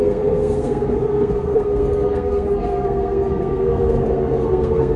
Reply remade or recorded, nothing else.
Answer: remade